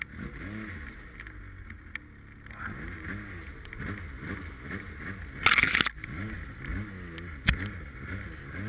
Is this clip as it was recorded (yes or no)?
yes